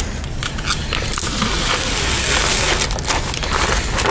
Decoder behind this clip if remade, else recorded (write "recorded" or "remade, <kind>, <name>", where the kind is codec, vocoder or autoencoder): recorded